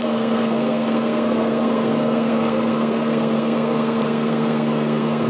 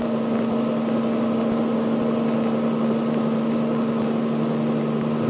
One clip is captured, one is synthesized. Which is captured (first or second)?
second